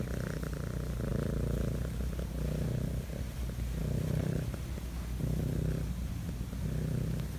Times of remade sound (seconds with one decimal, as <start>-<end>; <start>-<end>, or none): none